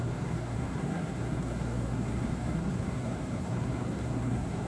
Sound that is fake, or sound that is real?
fake